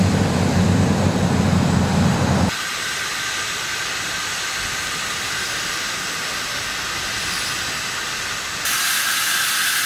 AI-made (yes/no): no